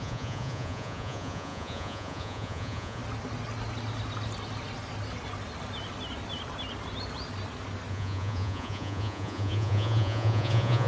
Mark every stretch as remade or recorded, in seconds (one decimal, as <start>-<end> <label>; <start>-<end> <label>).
0.0-3.0 remade; 3.0-7.9 recorded; 7.9-10.9 remade

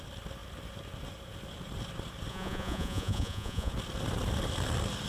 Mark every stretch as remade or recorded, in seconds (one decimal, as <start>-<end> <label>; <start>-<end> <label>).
0.0-2.3 recorded; 2.3-3.7 remade; 3.7-5.1 recorded

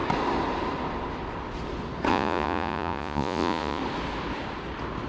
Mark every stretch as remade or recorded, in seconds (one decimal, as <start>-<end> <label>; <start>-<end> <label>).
0.0-2.1 recorded; 2.1-3.8 remade; 3.8-5.1 recorded

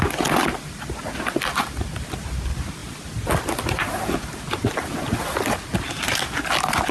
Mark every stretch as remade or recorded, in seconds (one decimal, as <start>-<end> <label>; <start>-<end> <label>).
0.0-6.9 recorded

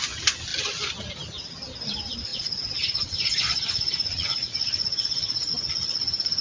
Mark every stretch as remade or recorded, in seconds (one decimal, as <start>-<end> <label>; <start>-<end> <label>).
0.0-2.3 recorded; 2.3-5.5 remade; 5.5-6.4 recorded

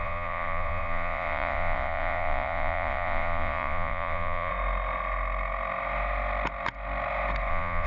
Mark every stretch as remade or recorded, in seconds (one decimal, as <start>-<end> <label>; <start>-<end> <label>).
0.0-4.5 remade; 4.5-7.5 recorded; 7.5-7.9 remade